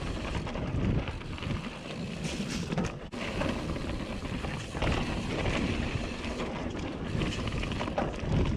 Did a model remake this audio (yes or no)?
yes